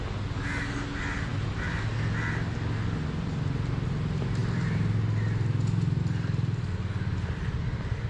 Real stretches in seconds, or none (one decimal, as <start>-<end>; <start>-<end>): 0.0-1.3; 1.8-8.1